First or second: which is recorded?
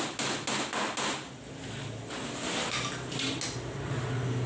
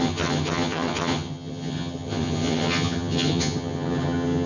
first